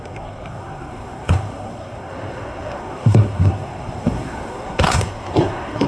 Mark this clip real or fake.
fake